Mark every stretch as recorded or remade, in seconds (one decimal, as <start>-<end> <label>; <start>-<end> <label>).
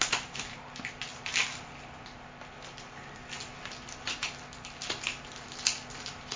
0.0-6.4 recorded